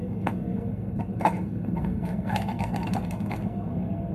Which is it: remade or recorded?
remade